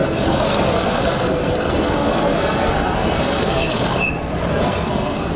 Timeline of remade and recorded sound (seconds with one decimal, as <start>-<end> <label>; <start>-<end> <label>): 0.0-4.0 remade; 4.0-4.5 recorded; 4.5-5.4 remade